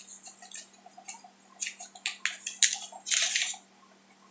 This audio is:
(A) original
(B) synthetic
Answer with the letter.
A